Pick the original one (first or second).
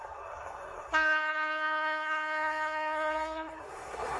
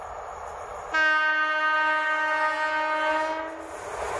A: second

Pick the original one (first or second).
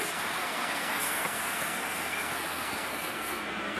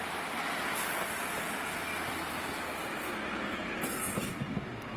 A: second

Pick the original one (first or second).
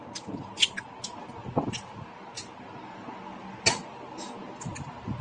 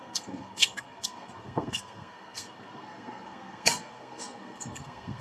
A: first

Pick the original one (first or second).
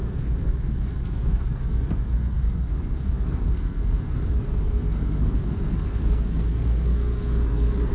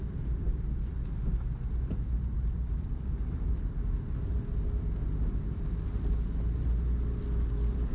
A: second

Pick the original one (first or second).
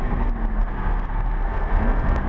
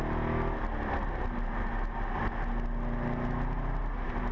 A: second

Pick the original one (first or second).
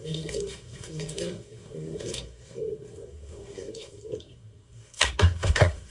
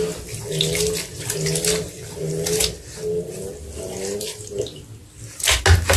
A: second